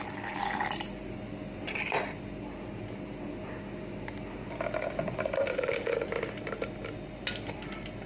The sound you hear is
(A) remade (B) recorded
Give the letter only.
B